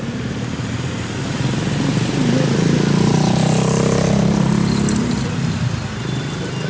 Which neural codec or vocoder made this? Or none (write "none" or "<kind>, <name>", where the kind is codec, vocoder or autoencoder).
none